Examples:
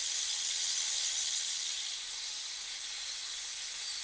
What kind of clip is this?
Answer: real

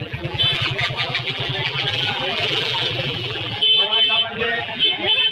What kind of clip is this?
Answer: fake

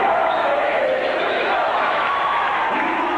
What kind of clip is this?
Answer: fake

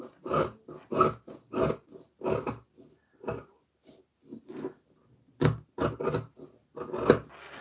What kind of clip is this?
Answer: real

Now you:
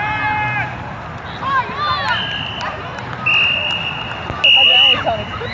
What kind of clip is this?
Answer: real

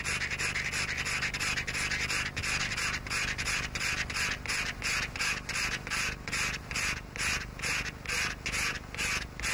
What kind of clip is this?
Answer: real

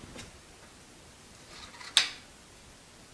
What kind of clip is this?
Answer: real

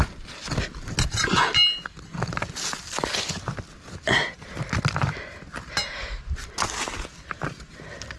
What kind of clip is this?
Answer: real